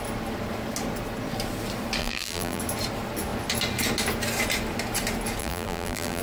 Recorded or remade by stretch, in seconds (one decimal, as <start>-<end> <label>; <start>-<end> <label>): 0.0-2.0 recorded; 2.0-2.6 remade; 2.6-5.4 recorded; 5.4-6.2 remade